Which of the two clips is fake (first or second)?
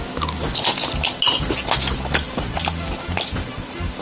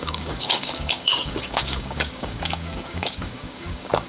second